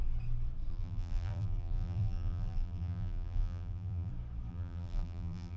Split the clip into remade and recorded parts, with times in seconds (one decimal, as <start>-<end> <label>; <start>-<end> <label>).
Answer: 0.0-0.7 recorded; 0.7-4.1 remade; 4.1-4.5 recorded; 4.5-5.6 remade